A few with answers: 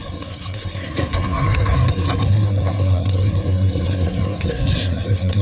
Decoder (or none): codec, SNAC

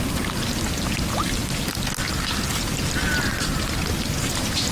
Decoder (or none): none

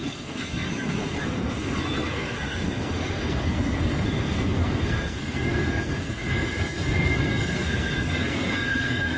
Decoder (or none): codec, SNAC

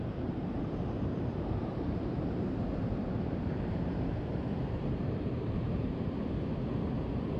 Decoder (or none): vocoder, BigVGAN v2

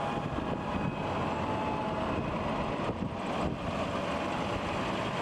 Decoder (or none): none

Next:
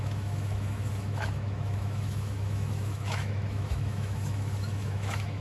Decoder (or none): autoencoder, DAC-VAE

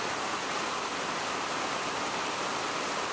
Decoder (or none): none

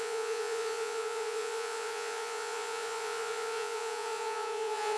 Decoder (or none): vocoder, Vocos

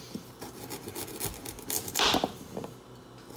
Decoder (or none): none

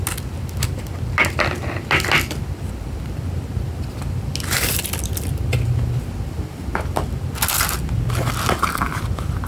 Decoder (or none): none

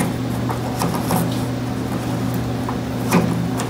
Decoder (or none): none